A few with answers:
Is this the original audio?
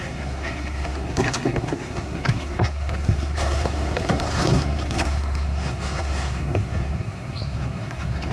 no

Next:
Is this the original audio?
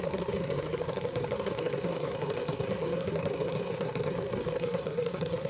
no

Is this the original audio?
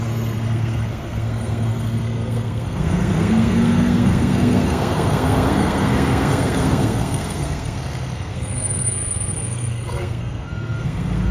no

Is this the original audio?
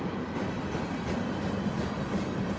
yes